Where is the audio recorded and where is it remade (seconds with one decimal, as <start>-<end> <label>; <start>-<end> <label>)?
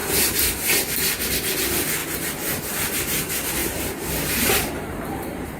0.0-0.5 remade; 0.5-3.6 recorded; 3.6-5.6 remade